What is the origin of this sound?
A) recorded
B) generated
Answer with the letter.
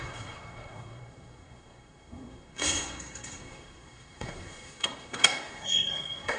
B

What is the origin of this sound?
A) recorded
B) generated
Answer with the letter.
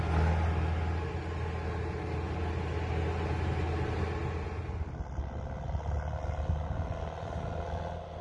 A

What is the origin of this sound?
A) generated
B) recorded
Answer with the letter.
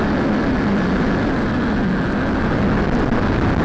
B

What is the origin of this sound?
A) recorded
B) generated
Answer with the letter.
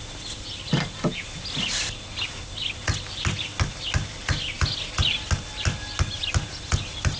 A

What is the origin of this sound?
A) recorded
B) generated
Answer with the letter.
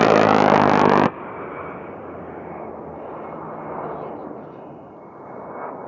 A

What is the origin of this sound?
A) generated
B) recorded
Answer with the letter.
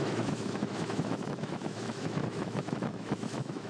A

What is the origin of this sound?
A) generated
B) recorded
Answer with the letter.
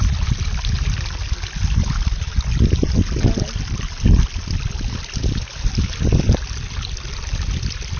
B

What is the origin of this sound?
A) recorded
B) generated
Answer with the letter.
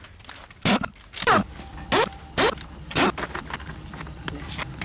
A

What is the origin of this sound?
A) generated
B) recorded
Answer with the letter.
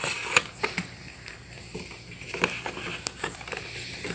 B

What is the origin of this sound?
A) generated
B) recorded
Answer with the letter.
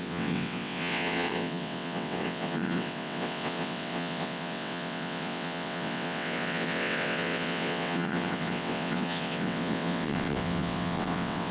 A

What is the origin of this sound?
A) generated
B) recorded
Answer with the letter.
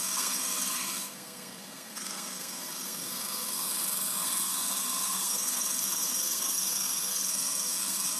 A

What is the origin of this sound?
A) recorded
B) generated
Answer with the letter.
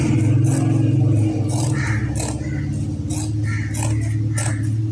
A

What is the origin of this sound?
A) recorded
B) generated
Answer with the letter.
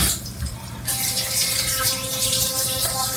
B